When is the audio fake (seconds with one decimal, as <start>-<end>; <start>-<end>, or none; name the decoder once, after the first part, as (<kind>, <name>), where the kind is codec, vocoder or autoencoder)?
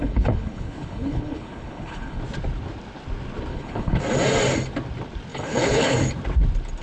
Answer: 0.0-2.2 (codec, HILCodec); 3.5-4.0; 5.3-5.9